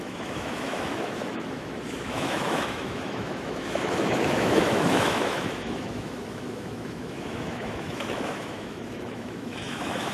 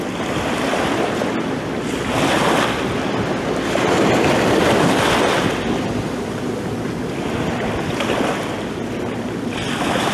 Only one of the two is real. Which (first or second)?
second